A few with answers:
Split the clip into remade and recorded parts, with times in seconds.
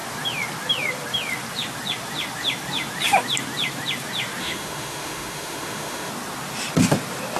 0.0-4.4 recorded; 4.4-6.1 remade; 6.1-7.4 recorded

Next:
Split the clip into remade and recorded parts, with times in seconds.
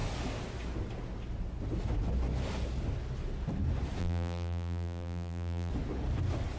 0.0-4.0 recorded; 4.0-5.7 remade; 5.7-6.6 recorded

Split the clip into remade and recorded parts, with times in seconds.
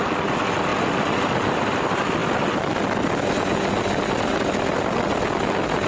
0.0-5.9 recorded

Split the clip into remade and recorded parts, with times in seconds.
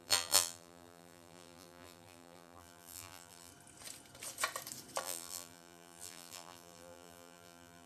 0.0-3.5 remade; 3.5-5.0 recorded; 5.0-7.9 remade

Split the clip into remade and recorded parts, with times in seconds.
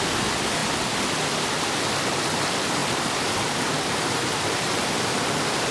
0.0-5.7 recorded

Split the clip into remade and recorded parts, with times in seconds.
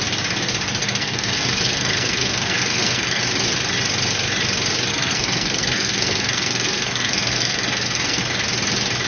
0.0-0.8 recorded; 0.8-3.2 remade; 3.2-4.9 recorded; 4.9-8.2 remade; 8.2-9.1 recorded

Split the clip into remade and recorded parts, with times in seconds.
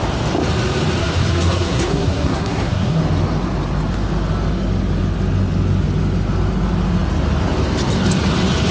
0.0-1.0 recorded; 1.0-3.0 remade; 3.0-8.7 recorded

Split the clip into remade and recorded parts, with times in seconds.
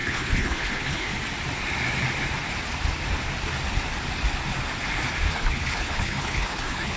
0.0-1.1 remade; 1.1-5.3 recorded; 5.3-7.0 remade